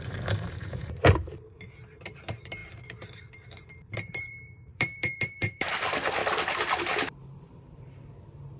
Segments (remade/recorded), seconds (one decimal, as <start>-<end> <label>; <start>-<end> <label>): 0.0-6.2 remade; 6.2-6.8 recorded; 6.8-8.6 remade